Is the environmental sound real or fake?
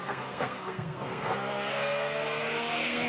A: fake